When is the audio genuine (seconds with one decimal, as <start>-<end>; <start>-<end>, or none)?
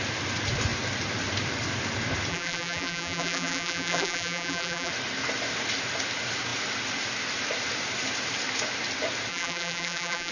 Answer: 0.0-2.3; 4.9-9.3